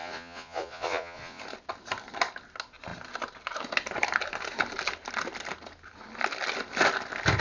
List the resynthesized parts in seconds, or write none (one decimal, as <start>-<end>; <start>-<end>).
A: 0.0-1.4

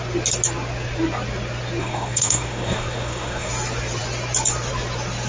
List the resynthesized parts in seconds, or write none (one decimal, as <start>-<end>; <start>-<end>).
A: 1.8-3.5